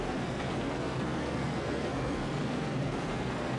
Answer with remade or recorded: remade